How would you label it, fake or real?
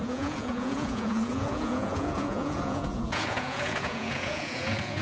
fake